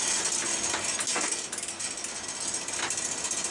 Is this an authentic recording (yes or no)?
yes